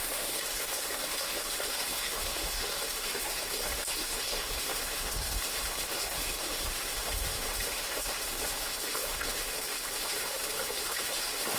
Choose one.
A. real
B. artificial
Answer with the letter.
B